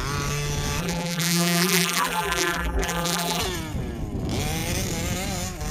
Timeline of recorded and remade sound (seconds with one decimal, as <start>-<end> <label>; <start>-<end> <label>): 0.0-0.8 recorded; 0.8-3.4 remade; 3.4-5.7 recorded